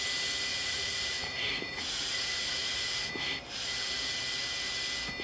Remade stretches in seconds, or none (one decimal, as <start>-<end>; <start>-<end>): 0.5-3.1